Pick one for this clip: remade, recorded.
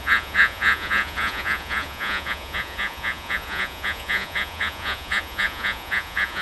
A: remade